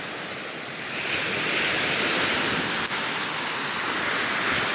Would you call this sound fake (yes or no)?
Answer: no